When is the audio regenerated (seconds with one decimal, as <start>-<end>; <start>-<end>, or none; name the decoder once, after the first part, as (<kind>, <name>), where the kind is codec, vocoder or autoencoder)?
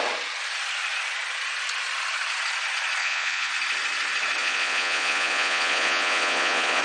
3.0-3.5 (vocoder, Vocos); 4.4-6.8